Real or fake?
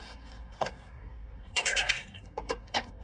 fake